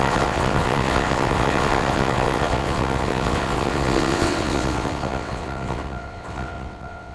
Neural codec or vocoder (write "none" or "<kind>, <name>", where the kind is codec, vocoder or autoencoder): vocoder, WaveNeXt